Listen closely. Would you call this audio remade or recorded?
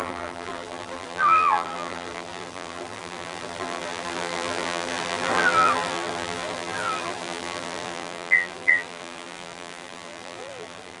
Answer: remade